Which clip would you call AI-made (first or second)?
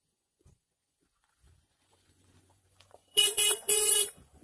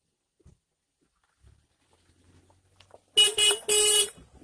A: first